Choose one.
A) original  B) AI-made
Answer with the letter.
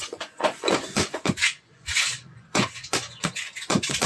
B